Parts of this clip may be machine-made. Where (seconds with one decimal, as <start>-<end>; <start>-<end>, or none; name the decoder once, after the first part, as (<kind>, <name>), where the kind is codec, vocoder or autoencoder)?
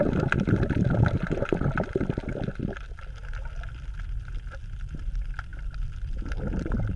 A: none